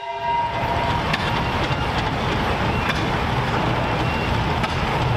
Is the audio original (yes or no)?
yes